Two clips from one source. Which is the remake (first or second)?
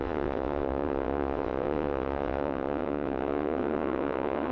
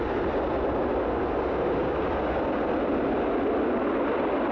first